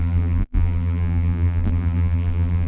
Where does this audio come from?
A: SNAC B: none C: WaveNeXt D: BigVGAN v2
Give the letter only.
D